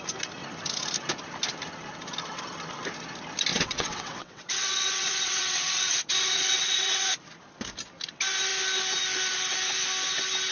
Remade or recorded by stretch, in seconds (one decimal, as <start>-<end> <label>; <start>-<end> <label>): 0.0-3.5 recorded; 3.5-7.1 remade; 7.1-10.5 recorded

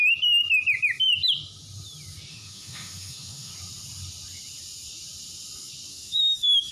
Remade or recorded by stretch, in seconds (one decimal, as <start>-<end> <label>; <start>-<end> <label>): 0.0-2.3 recorded; 2.3-3.5 remade; 3.5-5.9 recorded; 5.9-6.7 remade

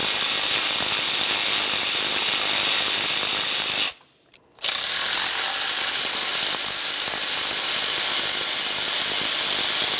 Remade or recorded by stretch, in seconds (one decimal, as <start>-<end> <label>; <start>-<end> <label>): 0.0-10.0 recorded

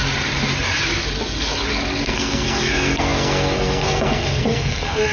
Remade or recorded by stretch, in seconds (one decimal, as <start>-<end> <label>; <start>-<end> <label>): 0.0-2.0 recorded; 2.0-5.1 remade

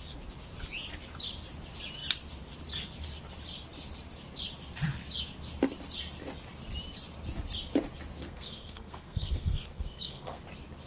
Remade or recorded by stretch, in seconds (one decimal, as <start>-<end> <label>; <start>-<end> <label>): 0.0-8.2 recorded; 8.2-10.4 remade; 10.4-10.9 recorded

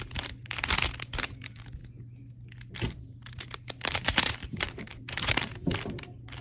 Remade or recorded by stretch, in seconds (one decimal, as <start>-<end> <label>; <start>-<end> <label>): 0.0-1.8 remade; 1.8-2.6 recorded; 2.6-6.4 remade

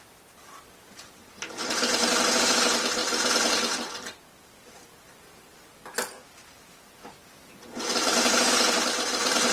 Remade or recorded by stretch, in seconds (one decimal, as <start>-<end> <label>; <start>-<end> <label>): 0.0-9.5 recorded

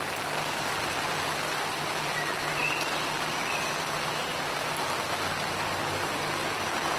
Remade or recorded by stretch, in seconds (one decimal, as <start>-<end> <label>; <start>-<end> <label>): 0.0-7.0 recorded